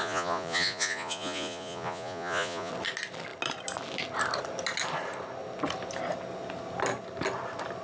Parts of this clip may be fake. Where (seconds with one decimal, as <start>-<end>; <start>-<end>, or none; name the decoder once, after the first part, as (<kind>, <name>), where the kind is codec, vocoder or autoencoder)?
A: 0.0-2.7 (vocoder, Vocos)